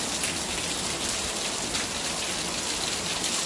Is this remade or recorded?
recorded